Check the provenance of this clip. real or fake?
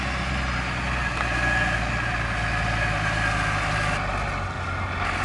real